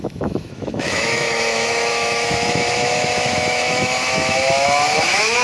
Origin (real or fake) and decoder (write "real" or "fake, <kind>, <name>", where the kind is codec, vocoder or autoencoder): fake, autoencoder, DAC-VAE